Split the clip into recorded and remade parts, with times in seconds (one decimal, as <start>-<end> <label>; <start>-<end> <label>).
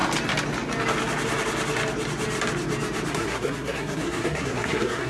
0.0-3.1 recorded; 3.1-5.1 remade